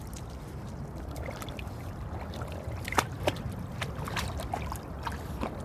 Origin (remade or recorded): recorded